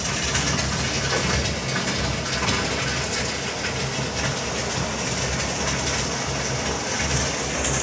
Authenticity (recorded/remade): recorded